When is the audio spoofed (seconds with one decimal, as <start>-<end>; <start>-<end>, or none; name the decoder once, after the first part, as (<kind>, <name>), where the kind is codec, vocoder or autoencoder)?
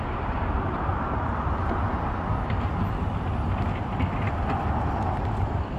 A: 0.0-0.9 (vocoder, BigVGAN v2); 4.4-5.8